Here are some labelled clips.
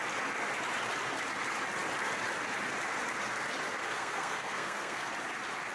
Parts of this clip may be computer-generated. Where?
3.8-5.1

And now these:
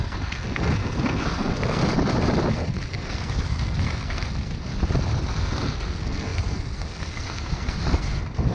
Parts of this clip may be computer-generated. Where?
0.0-1.8; 2.5-4.7; 5.3-8.5